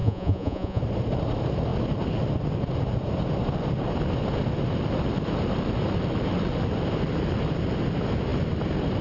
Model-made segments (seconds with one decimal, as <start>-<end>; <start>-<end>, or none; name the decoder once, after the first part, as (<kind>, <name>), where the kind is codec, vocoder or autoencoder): 0.0-0.8 (vocoder, Vocos)